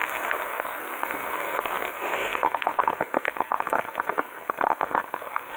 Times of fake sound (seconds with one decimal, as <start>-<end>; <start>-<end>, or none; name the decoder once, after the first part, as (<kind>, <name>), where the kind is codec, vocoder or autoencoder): 0.0-5.6 (codec, SNAC)